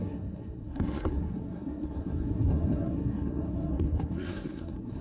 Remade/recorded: remade